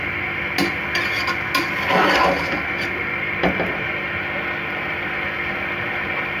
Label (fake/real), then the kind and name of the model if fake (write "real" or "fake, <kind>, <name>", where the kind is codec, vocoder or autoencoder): real